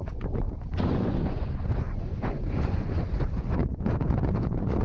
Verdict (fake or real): fake